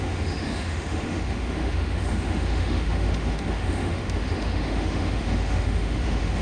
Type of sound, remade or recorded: remade